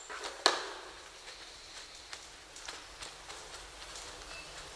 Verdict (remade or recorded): recorded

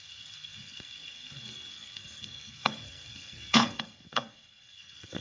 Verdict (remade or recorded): remade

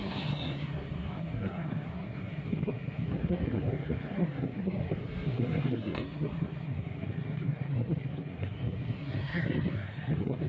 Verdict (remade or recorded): remade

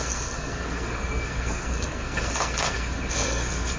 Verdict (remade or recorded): remade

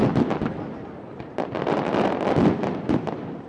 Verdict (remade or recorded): recorded